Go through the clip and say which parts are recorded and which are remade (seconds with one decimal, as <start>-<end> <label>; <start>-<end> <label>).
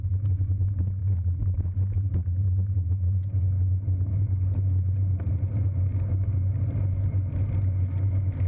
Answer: 0.0-8.5 recorded